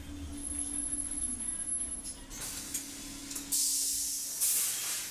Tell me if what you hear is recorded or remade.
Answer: recorded